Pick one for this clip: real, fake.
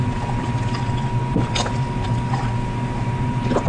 real